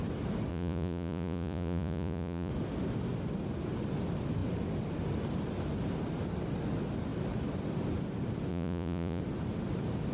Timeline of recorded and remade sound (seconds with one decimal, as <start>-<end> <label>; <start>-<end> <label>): 0.0-0.5 recorded; 0.5-2.5 remade; 2.5-8.5 recorded; 8.5-9.2 remade; 9.2-10.1 recorded